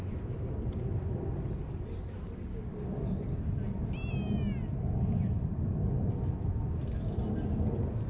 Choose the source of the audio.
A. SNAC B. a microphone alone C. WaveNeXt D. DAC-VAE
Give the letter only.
B